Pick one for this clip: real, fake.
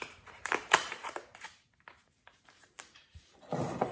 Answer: fake